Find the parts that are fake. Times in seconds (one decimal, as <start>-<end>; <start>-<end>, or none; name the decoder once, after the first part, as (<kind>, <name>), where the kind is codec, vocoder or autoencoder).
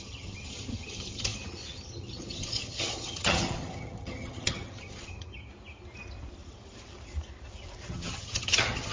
0.0-5.5 (vocoder, HiFi-GAN); 7.9-8.9